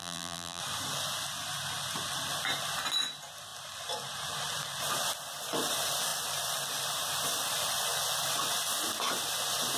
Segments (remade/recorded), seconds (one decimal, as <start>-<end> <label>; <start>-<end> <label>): 0.0-0.6 remade; 0.6-9.8 recorded